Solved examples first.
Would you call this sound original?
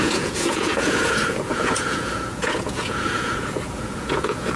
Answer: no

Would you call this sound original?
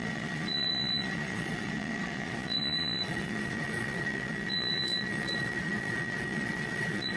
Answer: no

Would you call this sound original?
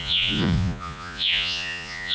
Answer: no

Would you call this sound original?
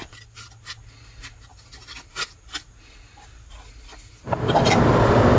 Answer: yes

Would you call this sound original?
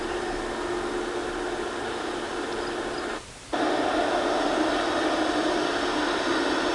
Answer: yes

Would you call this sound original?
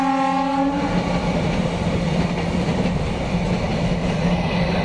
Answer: yes